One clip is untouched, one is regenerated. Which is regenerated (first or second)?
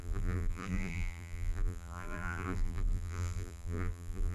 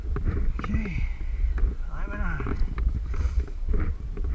first